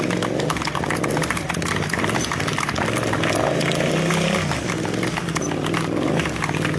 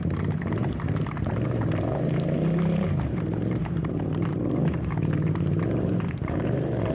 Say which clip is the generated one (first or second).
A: second